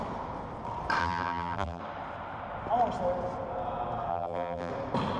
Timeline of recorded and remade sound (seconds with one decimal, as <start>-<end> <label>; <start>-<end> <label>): 0.0-1.0 recorded; 1.0-1.8 remade; 1.8-4.1 recorded; 4.1-4.7 remade; 4.7-5.2 recorded